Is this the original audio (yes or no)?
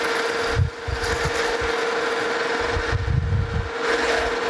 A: yes